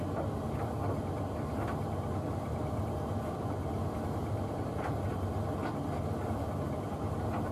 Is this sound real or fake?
real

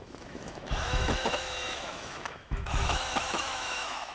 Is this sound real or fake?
fake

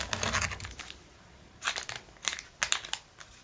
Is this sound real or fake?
real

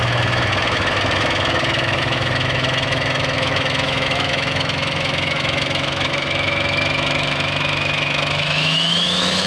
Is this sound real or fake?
fake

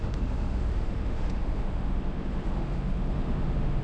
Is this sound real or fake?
fake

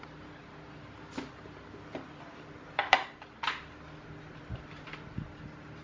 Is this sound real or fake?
real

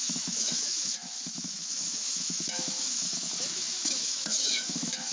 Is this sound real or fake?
fake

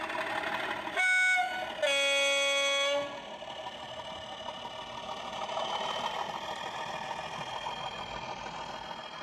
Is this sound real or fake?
real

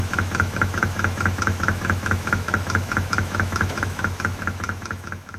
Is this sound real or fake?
fake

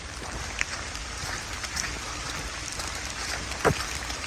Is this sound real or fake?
real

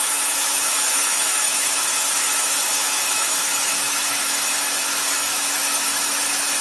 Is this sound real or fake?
fake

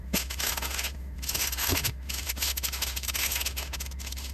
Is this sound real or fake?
fake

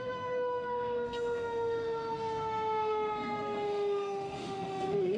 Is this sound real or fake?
fake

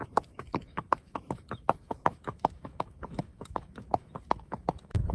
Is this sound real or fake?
fake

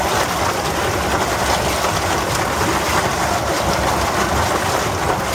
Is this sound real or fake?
real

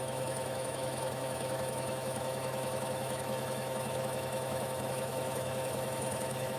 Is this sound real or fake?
fake